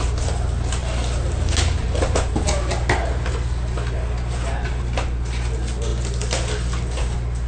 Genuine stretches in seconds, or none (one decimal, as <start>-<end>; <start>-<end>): 0.0-7.5